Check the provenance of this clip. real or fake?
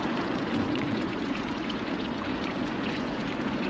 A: fake